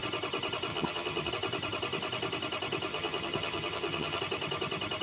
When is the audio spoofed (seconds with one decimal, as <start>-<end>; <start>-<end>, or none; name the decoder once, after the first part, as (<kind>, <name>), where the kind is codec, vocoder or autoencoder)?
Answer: 0.7-1.3 (vocoder, HiFi-GAN); 2.9-4.2